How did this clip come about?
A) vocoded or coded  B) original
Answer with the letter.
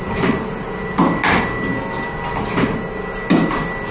B